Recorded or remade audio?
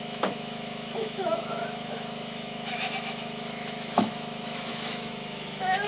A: remade